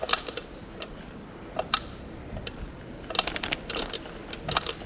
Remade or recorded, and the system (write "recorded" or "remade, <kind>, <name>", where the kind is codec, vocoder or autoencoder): recorded